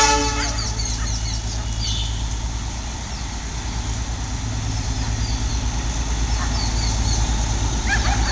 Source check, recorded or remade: recorded